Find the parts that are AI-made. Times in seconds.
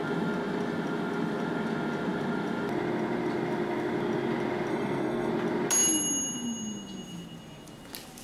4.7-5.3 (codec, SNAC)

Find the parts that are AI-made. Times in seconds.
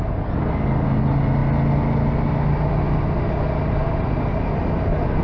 3.8-4.6 (vocoder, BigVGAN v2)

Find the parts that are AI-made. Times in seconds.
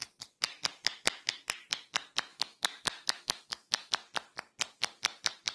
2.3-3.9 (autoencoder, DAC-VAE)